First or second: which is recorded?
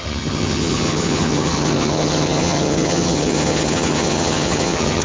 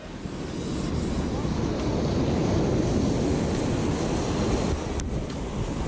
second